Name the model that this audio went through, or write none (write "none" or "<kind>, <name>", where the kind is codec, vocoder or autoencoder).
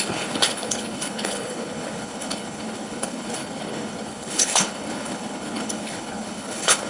codec, HILCodec